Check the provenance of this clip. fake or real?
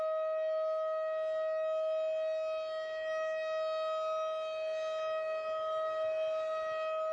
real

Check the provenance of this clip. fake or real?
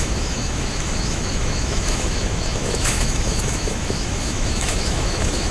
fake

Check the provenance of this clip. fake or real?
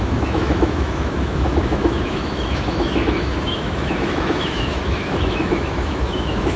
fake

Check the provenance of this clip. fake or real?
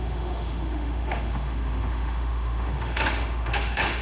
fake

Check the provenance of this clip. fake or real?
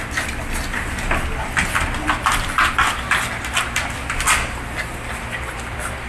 real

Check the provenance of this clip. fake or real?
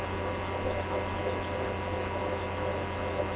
real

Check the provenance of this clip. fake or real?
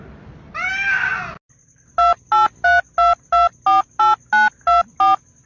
real